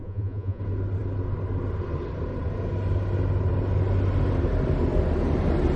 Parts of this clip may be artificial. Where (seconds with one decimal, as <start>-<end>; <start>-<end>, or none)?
0.0-0.6